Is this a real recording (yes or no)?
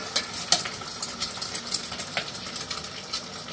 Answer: yes